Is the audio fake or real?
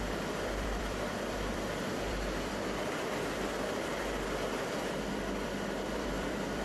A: fake